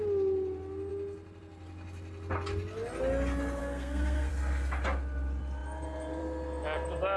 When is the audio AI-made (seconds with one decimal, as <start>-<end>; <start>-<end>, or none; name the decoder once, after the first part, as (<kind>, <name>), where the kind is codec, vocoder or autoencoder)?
3.6-4.3 (codec, SNAC)